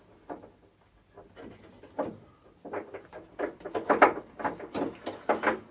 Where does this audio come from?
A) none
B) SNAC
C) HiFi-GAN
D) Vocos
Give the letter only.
A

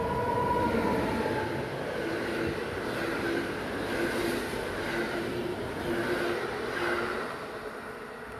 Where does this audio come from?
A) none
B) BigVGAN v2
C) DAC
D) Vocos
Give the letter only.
A